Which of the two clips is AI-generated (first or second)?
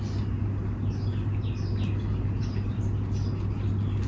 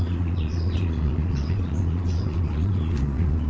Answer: second